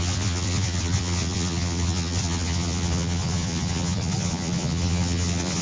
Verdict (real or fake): fake